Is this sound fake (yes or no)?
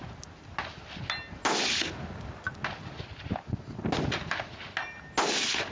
no